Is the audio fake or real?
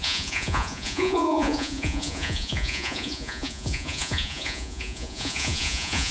fake